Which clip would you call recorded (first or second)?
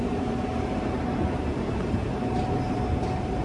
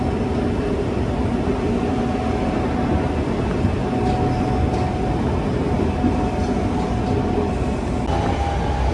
second